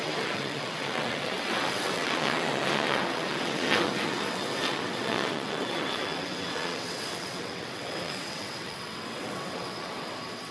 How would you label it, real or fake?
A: fake